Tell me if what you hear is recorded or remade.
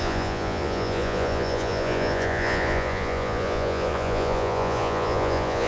remade